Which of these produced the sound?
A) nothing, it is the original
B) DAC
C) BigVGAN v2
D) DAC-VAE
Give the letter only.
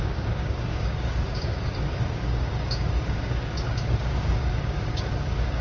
B